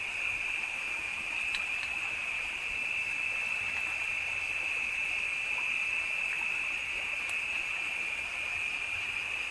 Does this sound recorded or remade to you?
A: remade